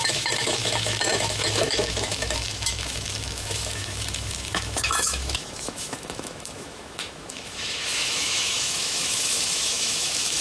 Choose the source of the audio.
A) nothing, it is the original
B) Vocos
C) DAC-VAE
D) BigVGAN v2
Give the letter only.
C